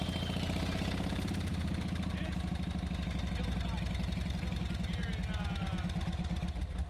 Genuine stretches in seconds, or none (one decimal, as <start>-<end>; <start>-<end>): 0.0-6.9